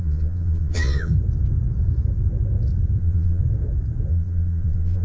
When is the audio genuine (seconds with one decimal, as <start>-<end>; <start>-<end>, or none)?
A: 1.1-3.0; 3.4-4.1